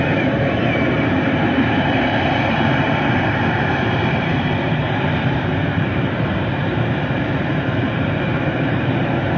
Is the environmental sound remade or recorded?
remade